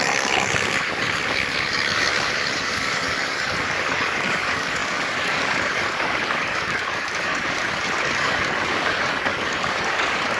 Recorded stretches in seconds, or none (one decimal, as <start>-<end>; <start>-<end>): none